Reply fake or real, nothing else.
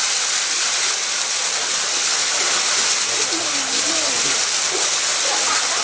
real